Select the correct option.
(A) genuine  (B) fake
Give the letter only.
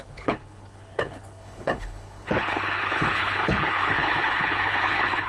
B